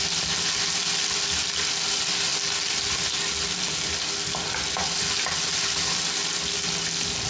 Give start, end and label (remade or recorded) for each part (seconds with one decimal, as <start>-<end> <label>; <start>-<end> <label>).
0.0-7.3 recorded